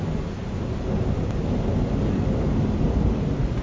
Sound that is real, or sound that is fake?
real